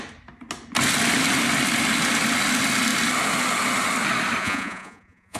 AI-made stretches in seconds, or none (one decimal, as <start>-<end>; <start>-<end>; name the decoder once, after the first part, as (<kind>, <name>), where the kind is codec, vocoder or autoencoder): 4.4-5.4 (vocoder, Vocos)